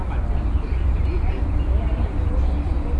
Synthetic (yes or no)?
no